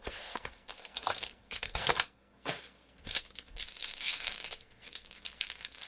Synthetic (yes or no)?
yes